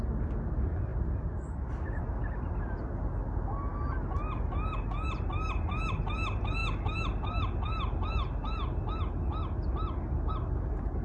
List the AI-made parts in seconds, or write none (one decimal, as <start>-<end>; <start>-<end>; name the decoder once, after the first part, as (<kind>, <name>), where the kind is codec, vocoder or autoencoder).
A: none